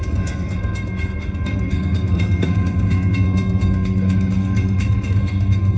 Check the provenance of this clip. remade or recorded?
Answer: remade